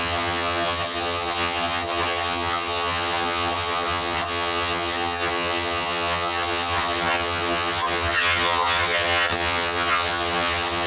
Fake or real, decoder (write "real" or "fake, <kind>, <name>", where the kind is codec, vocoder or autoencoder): fake, vocoder, HiFi-GAN